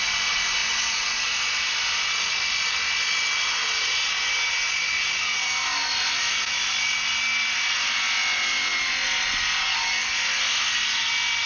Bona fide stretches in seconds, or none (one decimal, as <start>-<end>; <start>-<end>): 0.0-9.6; 10.1-11.5